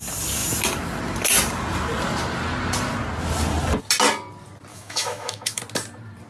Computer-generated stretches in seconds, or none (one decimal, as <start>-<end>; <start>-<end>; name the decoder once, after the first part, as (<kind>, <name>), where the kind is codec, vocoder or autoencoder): 4.7-5.6 (autoencoder, DAC-VAE)